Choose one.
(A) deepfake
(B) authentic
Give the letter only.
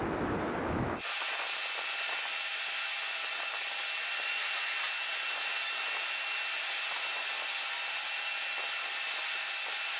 B